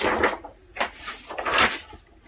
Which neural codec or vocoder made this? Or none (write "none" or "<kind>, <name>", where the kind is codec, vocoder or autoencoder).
none